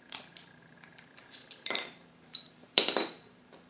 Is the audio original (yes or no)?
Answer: no